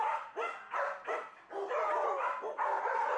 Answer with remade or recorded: recorded